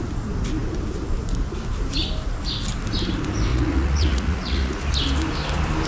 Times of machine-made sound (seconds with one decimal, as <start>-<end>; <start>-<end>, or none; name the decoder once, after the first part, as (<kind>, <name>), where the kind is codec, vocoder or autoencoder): 3.5-4.8 (vocoder, Vocos)